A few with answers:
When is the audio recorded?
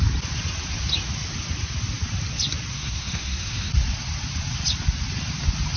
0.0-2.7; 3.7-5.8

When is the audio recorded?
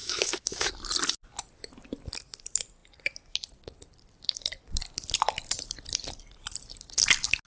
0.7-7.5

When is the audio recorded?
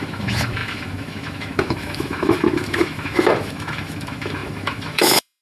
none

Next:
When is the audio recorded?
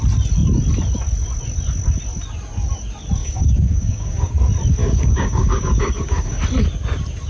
0.0-3.2; 4.3-4.8; 6.4-7.3